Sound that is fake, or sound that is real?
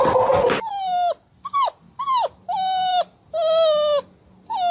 real